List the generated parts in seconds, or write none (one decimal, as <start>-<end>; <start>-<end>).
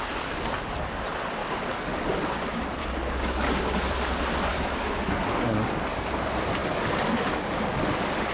1.4-2.1; 2.8-3.6; 4.5-6.1; 6.6-8.3